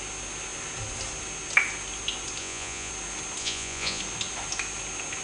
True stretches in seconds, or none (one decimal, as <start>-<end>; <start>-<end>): 0.0-2.4; 2.9-3.4; 4.0-5.2